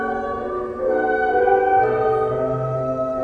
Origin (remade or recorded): recorded